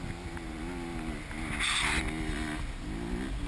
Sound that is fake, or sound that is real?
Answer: real